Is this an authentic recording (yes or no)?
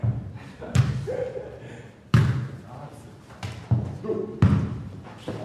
yes